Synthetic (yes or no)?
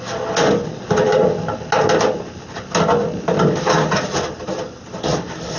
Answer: no